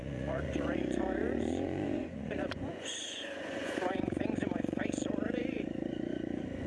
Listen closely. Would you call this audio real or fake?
fake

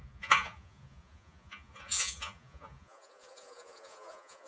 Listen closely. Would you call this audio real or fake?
fake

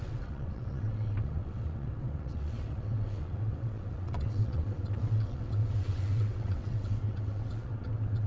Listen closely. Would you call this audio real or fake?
fake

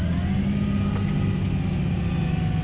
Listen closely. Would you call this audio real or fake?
real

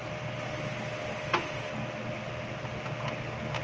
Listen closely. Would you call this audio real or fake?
real